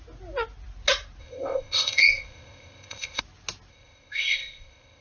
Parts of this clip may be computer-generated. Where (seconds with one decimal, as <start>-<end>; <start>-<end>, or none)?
1.2-3.2; 3.7-5.0